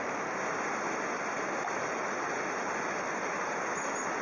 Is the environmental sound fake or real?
real